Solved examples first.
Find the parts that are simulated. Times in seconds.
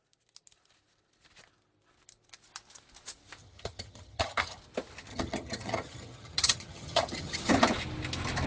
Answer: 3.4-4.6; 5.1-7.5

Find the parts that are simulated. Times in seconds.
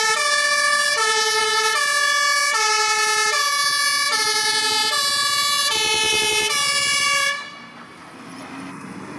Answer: none